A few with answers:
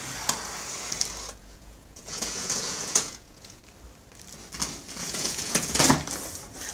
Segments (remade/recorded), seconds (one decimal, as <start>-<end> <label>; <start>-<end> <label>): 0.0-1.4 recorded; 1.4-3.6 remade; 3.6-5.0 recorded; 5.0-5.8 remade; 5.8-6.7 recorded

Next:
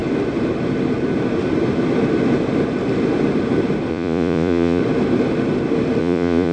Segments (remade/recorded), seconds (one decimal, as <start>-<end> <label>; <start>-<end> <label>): 0.0-3.9 recorded; 3.9-4.8 remade; 4.8-6.0 recorded; 6.0-6.5 remade

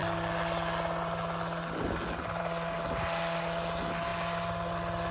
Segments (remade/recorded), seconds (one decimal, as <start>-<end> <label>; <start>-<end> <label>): 0.0-5.1 recorded